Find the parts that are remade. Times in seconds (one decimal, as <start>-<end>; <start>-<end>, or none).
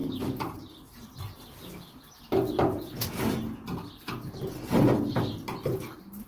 0.0-0.7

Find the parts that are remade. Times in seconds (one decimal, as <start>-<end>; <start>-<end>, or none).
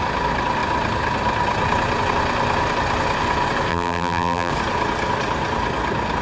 3.7-4.5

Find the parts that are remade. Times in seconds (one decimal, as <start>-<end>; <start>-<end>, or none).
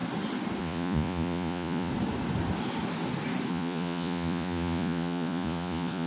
0.6-1.9; 3.5-6.1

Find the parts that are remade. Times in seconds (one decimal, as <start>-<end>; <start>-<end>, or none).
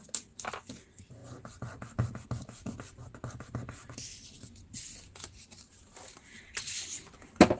none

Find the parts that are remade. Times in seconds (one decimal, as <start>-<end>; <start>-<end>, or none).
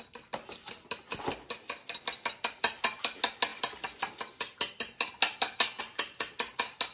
none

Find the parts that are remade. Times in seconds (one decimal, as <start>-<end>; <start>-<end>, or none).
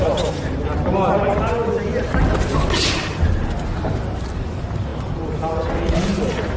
none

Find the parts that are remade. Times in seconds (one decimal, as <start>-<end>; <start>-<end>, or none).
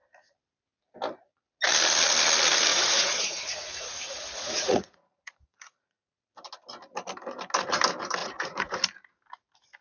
2.7-6.2; 8.2-8.8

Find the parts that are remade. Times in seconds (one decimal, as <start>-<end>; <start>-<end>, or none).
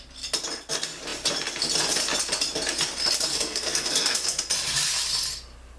3.3-4.4